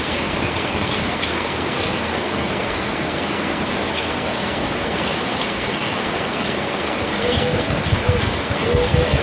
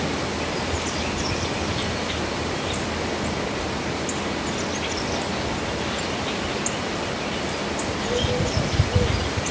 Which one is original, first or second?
second